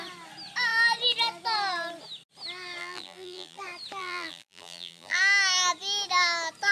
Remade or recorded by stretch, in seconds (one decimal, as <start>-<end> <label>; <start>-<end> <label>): 0.0-2.8 recorded; 2.8-3.6 remade; 3.6-4.0 recorded; 4.0-5.2 remade; 5.2-6.7 recorded